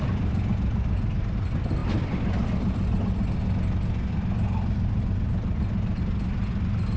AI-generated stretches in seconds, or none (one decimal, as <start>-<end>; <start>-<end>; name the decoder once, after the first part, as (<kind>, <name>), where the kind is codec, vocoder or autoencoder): none